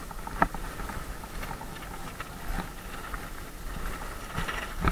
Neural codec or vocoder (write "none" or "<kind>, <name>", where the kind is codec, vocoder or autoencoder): none